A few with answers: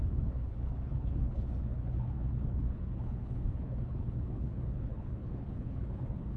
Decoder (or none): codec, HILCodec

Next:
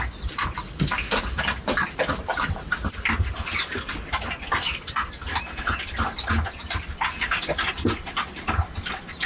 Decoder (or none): none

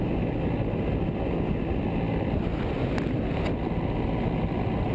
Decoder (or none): none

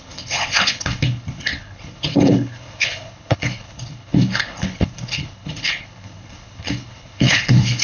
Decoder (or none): codec, HILCodec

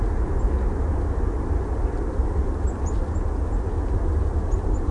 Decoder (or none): none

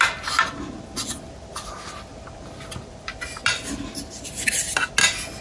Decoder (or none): none